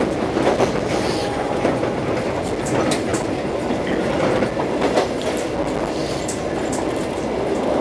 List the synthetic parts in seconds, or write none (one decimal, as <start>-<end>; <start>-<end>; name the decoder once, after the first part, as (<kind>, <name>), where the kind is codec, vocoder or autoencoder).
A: 1.2-1.8 (vocoder, Vocos)